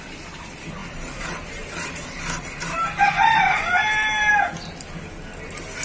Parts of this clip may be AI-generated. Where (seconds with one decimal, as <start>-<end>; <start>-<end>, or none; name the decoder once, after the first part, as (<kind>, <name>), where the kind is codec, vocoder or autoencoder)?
0.8-4.3 (vocoder, BigVGAN v2)